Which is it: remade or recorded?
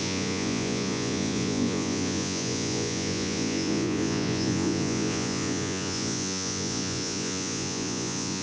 remade